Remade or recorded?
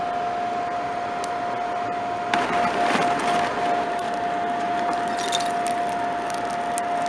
recorded